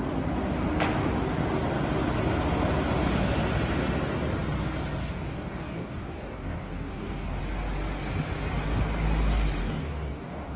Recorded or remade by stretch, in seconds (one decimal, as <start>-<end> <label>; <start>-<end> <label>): 0.0-5.0 recorded; 5.0-7.4 remade; 7.4-9.6 recorded; 9.6-10.6 remade